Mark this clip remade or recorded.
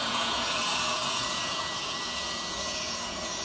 remade